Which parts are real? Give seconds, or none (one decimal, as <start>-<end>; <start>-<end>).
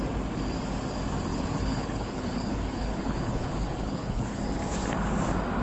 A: 0.0-1.3; 4.4-5.6